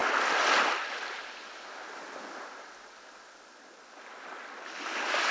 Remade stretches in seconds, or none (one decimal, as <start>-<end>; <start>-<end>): none